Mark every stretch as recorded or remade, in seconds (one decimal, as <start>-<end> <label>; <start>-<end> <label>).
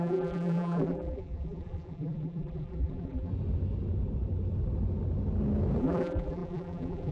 0.0-3.3 remade; 3.3-5.8 recorded; 5.8-7.1 remade